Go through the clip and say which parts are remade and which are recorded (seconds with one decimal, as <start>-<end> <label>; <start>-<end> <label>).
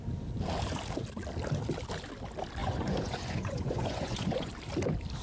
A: 0.0-2.6 recorded; 2.6-4.5 remade; 4.5-5.2 recorded